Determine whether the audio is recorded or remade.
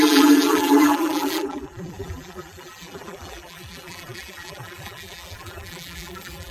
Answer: remade